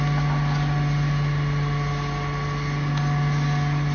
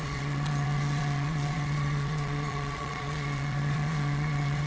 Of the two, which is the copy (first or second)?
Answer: second